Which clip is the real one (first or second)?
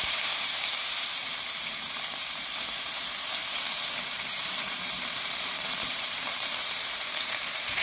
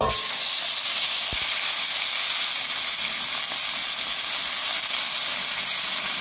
second